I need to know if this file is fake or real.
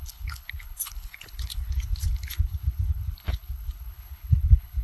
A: fake